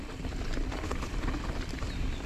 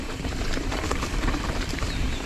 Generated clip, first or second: second